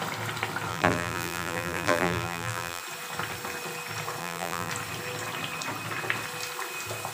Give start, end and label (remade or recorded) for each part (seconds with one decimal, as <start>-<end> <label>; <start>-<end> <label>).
0.0-0.7 recorded; 0.7-2.8 remade; 2.8-4.2 recorded; 4.2-4.7 remade; 4.7-7.1 recorded